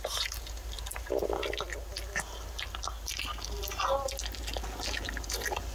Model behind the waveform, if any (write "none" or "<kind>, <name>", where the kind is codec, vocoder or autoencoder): none